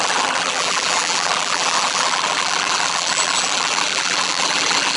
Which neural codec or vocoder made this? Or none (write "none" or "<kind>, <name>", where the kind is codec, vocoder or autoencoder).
vocoder, BigVGAN v2